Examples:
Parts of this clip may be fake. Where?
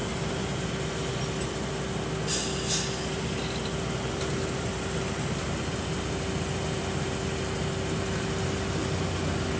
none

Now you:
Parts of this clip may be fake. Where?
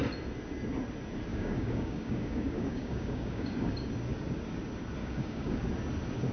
1.3-3.9 (codec, DAC); 5.0-5.6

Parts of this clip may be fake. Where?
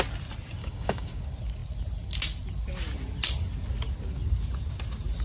0.6-1.2 (codec, DAC)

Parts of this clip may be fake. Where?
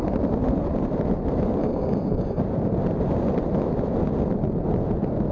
1.6-2.4 (codec, DAC)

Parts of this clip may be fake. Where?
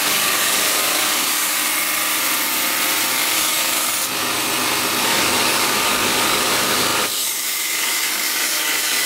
0.0-1.6 (codec, DAC); 3.1-3.9; 5.0-9.1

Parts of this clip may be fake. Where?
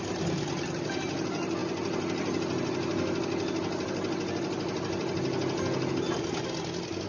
none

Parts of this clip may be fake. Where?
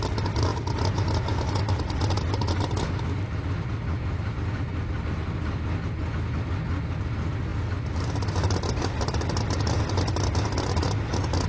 none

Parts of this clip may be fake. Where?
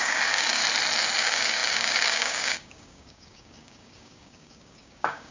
0.0-0.6 (codec, DAC); 1.2-5.3